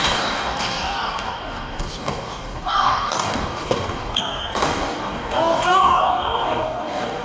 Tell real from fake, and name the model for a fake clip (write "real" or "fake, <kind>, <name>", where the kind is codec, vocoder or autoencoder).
fake, codec, DAC